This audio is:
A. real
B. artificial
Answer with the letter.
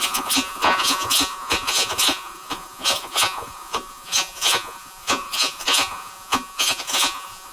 B